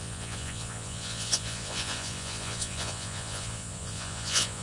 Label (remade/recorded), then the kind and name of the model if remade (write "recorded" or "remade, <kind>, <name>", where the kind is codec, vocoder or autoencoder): remade, vocoder, Vocos